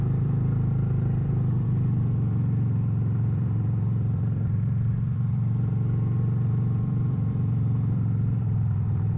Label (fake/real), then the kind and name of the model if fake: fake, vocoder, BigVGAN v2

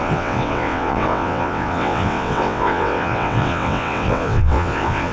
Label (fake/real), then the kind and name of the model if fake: fake, vocoder, WaveNeXt